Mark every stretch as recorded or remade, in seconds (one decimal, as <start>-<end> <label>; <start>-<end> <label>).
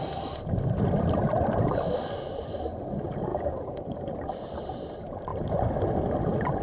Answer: 0.0-3.3 recorded; 3.3-4.1 remade; 4.1-6.6 recorded